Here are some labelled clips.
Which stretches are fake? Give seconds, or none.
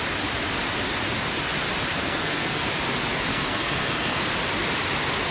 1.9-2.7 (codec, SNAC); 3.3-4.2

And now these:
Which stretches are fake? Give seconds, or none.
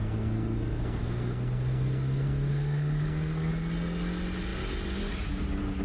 0.0-3.5 (codec, SNAC)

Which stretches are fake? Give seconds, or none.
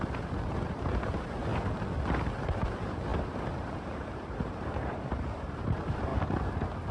0.0-1.5 (vocoder, BigVGAN v2); 2.4-6.1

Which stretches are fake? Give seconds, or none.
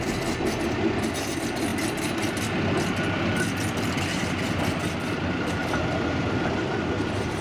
none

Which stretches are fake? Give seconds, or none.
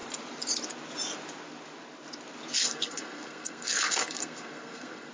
2.6-5.1 (codec, SNAC)